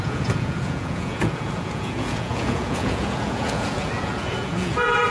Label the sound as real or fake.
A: fake